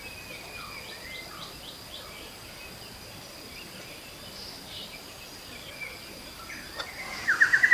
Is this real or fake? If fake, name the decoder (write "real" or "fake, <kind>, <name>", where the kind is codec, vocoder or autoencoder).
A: real